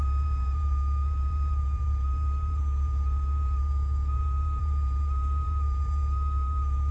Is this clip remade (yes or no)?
yes